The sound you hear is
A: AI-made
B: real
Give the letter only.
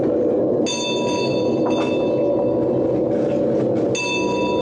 B